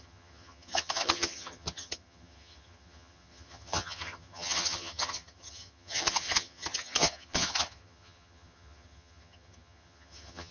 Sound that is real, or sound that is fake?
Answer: fake